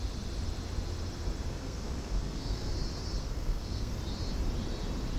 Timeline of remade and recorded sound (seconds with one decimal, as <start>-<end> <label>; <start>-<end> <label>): 0.0-1.5 recorded; 1.5-2.7 remade; 2.7-3.2 recorded; 3.2-3.9 remade; 3.9-5.2 recorded